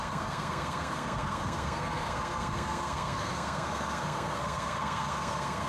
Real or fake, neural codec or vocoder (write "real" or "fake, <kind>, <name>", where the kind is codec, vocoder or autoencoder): fake, codec, SNAC